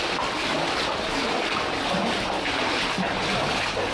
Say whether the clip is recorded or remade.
recorded